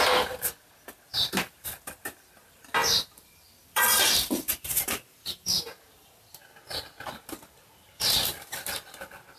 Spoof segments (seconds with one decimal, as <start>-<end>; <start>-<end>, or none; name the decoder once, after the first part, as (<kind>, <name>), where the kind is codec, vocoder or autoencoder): 2.8-6.1 (vocoder, BigVGAN v2)